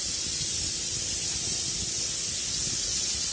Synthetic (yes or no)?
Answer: no